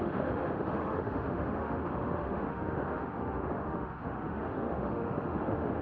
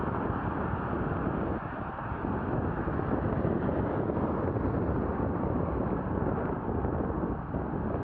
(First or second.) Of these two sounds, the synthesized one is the first